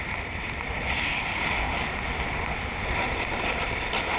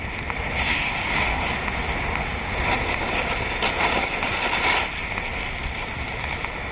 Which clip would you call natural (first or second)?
second